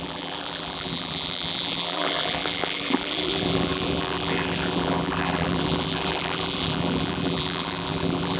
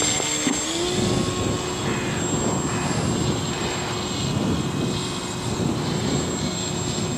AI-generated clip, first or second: first